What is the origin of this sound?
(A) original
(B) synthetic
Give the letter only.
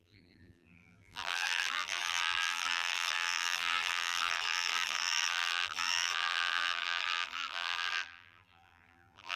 B